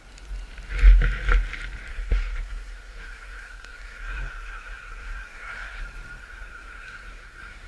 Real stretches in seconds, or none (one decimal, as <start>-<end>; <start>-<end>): 0.0-1.9; 5.8-6.2